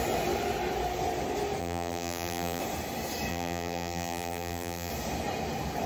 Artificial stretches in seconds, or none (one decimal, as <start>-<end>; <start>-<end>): 1.6-2.6; 3.3-4.9